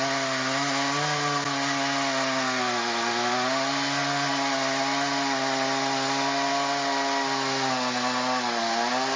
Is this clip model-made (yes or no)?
no